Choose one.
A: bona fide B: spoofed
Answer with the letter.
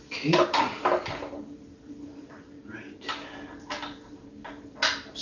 A